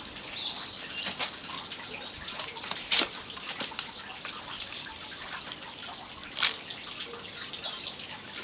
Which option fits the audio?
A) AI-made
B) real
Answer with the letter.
B